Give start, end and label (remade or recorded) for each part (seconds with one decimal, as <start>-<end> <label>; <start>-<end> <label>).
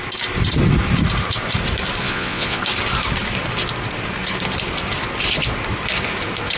0.0-2.0 recorded; 2.0-2.6 remade; 2.6-6.6 recorded